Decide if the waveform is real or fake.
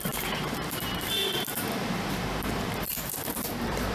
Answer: fake